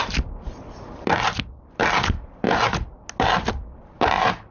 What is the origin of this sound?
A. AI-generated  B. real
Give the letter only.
B